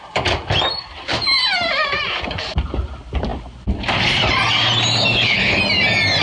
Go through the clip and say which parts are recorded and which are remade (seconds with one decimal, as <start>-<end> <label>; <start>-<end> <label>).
0.0-5.1 recorded; 5.1-5.6 remade; 5.6-6.2 recorded